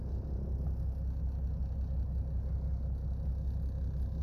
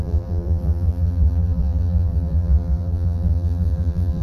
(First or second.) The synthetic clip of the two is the second